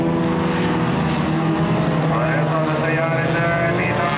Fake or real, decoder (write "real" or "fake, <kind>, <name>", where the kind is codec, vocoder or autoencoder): real